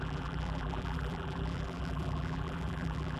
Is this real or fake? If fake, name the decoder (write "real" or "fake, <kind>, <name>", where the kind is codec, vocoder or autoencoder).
fake, vocoder, BigVGAN v2